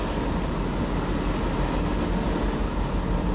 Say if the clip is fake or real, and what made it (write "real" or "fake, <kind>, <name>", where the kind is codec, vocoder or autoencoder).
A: real